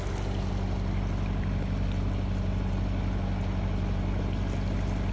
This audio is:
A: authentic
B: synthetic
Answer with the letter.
A